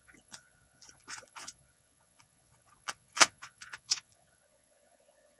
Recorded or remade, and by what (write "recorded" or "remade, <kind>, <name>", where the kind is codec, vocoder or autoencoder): remade, vocoder, Vocos